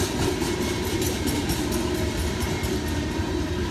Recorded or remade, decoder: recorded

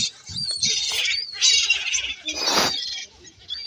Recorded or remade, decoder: remade, vocoder, Vocos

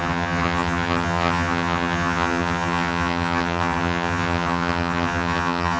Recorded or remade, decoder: remade, vocoder, HiFi-GAN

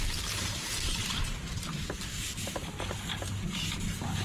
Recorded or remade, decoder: remade, vocoder, BigVGAN v2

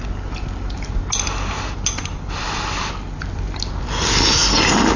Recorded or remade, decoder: recorded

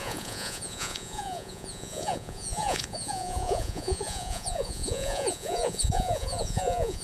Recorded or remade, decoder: remade, vocoder, Vocos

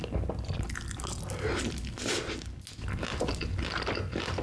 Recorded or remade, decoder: recorded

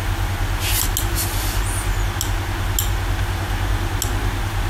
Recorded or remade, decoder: recorded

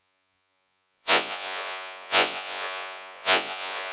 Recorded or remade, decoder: remade, vocoder, Vocos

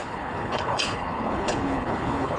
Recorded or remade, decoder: remade, codec, HILCodec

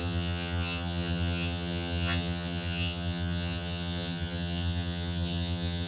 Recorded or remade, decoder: remade, vocoder, HiFi-GAN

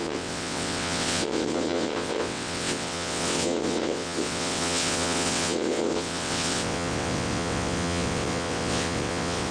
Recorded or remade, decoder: remade, vocoder, WaveNeXt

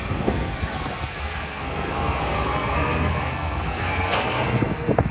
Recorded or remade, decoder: remade, codec, SNAC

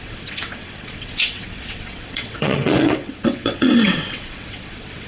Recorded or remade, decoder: remade, vocoder, WaveNeXt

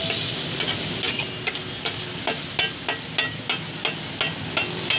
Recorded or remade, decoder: recorded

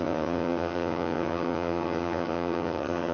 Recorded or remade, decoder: remade, vocoder, HiFi-GAN